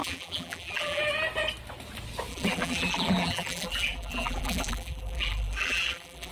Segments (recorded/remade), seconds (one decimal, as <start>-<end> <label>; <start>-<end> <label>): 0.0-1.0 remade; 1.0-2.3 recorded; 2.3-6.3 remade